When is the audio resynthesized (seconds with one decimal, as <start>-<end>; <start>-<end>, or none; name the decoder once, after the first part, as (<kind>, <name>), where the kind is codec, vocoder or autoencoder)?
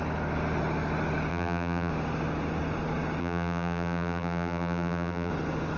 1.3-1.9 (vocoder, BigVGAN v2); 3.2-5.3